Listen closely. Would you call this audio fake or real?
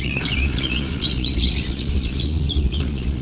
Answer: fake